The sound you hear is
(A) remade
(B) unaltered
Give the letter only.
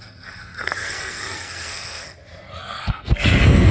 A